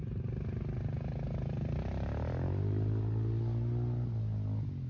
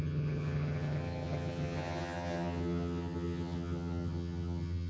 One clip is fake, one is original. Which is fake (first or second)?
second